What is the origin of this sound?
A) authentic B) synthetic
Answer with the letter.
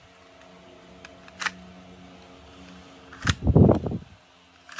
A